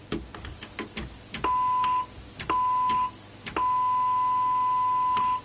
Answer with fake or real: real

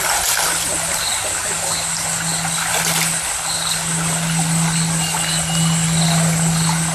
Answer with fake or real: real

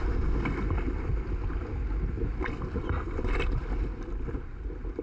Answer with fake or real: real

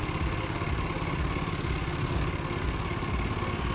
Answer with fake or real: real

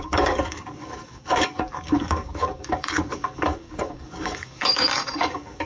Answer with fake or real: fake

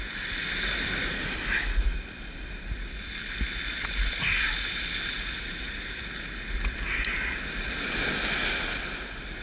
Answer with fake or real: real